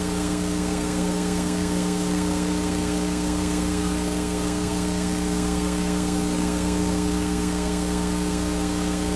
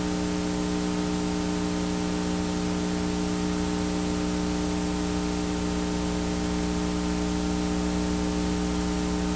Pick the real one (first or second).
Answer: second